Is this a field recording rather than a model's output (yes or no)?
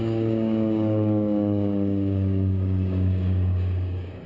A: no